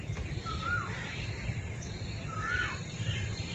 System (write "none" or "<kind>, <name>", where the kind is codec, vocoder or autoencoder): none